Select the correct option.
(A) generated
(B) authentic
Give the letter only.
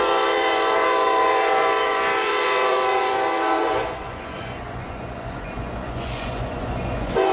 A